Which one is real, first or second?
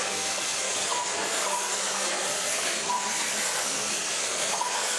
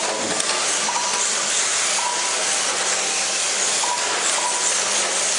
second